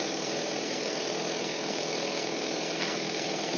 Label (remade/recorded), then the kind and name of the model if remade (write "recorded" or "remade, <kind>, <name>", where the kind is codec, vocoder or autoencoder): remade, codec, SNAC